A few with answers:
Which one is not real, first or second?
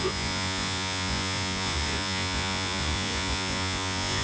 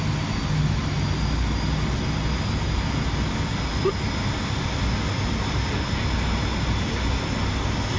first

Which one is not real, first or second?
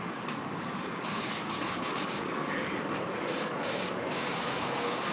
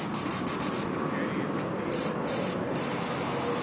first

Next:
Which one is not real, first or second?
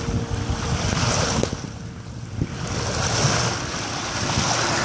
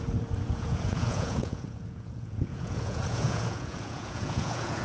second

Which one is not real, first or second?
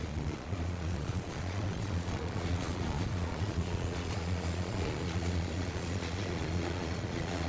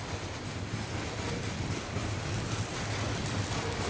first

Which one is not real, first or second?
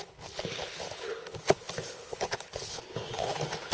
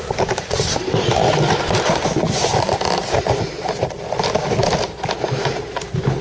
first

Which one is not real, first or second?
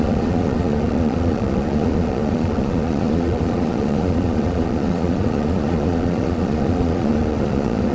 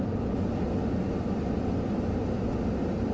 first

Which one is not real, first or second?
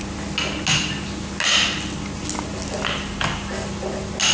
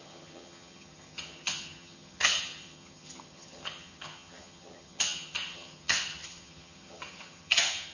second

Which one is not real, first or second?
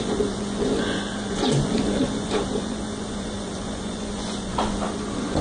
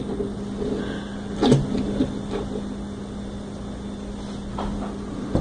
first